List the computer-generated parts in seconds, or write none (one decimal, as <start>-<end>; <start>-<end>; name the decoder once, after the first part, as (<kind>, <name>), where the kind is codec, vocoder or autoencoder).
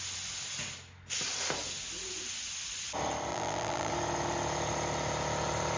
3.3-3.9 (vocoder, BigVGAN v2)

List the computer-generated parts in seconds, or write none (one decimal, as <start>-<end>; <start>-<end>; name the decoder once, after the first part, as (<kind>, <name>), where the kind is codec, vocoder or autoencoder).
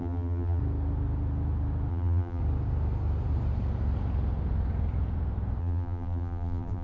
0.0-0.6 (vocoder, BigVGAN v2); 1.9-2.4; 5.6-6.8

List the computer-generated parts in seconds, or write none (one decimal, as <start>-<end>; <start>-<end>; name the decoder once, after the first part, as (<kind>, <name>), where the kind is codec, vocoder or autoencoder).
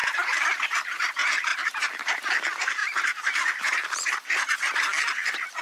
0.0-5.6 (vocoder, BigVGAN v2)